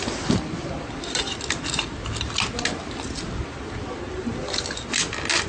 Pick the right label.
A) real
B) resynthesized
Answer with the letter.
A